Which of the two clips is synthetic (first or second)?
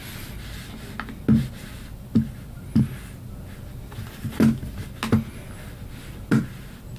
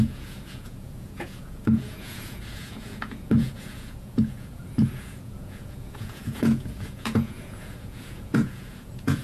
second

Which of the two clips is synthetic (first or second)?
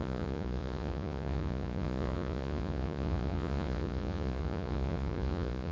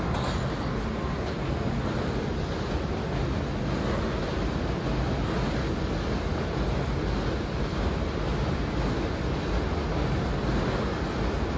first